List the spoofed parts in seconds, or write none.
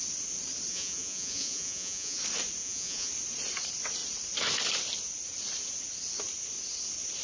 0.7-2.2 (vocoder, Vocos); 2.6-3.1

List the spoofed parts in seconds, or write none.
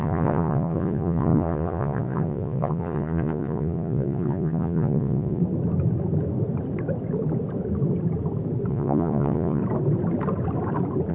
0.0-5.4 (vocoder, Vocos); 8.7-9.6